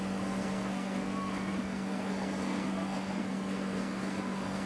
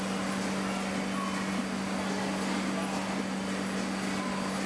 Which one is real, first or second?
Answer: second